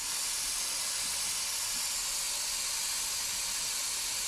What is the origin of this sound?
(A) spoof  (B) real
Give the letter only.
B